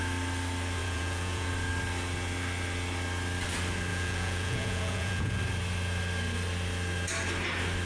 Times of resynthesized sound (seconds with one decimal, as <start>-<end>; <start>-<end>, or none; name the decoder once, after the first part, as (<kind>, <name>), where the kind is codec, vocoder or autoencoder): 0.8-1.5 (vocoder, Vocos); 3.9-5.4